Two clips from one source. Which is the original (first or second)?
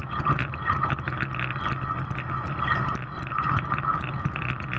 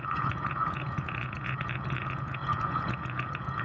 first